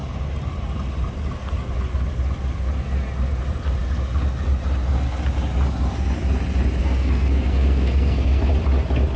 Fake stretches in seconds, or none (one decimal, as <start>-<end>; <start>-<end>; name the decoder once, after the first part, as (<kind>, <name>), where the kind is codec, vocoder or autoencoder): 6.8-8.5 (codec, SNAC)